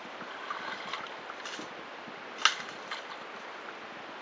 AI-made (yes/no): no